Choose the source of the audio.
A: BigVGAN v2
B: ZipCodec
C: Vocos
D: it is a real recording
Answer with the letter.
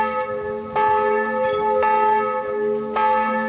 D